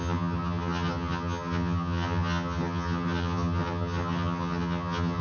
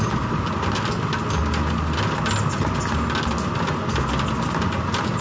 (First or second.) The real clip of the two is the second